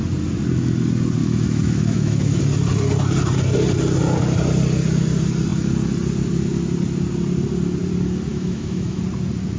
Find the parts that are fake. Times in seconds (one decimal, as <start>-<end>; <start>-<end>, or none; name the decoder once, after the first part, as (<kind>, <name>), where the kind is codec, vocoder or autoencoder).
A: 1.2-2.4 (autoencoder, DAC-VAE); 8.3-9.0

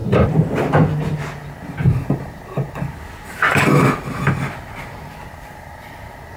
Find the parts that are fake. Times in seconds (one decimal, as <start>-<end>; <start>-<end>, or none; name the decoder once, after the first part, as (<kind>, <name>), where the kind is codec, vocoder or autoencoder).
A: none

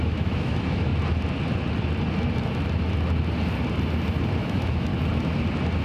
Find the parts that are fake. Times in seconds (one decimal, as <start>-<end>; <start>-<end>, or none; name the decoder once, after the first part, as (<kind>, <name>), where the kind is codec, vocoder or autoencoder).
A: 0.0-0.9 (autoencoder, DAC-VAE); 4.4-4.9

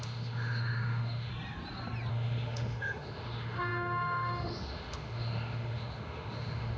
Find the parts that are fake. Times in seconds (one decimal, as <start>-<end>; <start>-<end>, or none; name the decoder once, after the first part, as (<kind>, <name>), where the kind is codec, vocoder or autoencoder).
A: 0.0-1.3 (autoencoder, DAC-VAE); 2.1-6.8